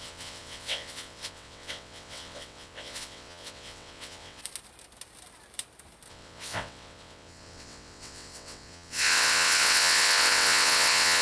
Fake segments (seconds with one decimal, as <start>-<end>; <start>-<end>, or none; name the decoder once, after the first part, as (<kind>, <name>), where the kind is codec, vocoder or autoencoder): 0.0-4.4 (vocoder, WaveNeXt); 6.1-11.2